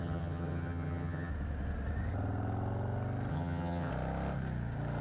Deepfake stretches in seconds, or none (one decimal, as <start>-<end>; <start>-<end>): 0.0-1.3; 3.3-3.9